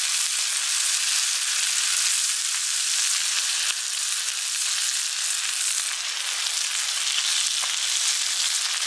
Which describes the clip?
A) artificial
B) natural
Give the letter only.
B